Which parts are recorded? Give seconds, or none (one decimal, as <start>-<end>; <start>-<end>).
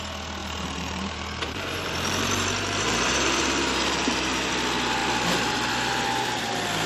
0.0-0.4; 4.5-6.9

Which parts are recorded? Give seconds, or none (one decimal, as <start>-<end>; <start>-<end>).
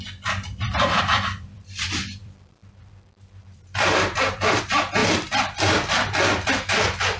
none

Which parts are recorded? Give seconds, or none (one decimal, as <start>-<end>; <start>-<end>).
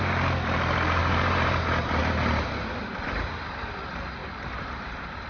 0.0-1.0; 1.6-2.0; 3.6-4.2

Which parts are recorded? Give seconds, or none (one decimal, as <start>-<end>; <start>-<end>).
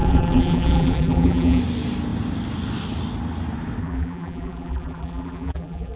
1.6-3.8